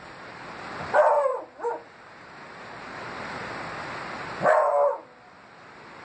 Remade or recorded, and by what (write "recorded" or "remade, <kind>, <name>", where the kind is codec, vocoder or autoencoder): recorded